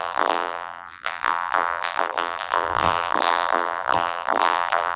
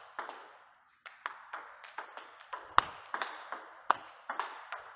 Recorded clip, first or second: second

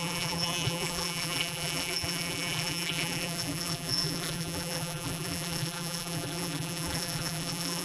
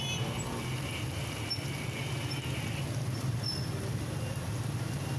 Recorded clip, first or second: second